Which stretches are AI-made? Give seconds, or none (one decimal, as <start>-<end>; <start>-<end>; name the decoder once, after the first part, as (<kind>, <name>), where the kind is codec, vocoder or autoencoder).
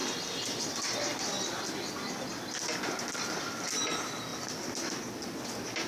none